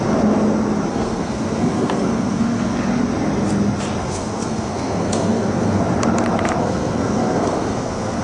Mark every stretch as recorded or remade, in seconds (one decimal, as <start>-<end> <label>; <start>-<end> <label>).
0.0-0.9 recorded; 0.9-2.7 remade; 2.7-4.0 recorded; 4.0-5.8 remade; 5.8-6.6 recorded; 6.6-8.2 remade